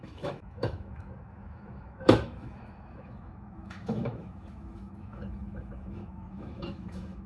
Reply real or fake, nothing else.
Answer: fake